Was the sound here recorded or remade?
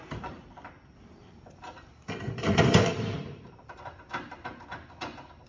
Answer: remade